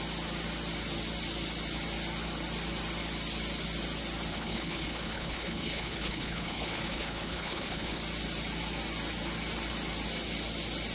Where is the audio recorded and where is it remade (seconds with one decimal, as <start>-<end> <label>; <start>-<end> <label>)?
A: 0.0-4.3 recorded; 4.3-8.0 remade; 8.0-10.9 recorded